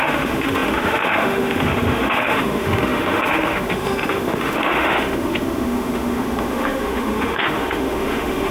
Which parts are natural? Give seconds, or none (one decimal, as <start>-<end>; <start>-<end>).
none